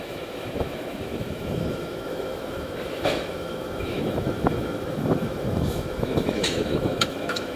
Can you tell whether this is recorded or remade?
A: remade